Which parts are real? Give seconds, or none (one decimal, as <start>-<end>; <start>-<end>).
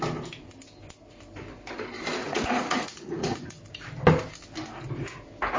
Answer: 0.0-2.2; 3.6-5.6